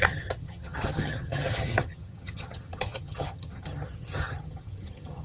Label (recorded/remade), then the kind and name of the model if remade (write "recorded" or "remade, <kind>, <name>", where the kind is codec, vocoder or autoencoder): remade, vocoder, HiFi-GAN